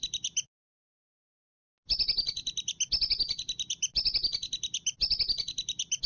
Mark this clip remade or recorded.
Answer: recorded